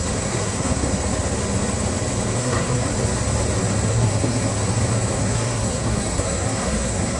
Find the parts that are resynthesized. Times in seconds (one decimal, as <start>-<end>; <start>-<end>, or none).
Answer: 0.0-0.9; 2.4-2.9; 3.9-4.5; 5.1-7.2